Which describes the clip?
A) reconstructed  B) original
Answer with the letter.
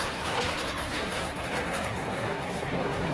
A